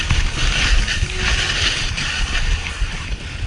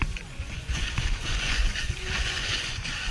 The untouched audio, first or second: first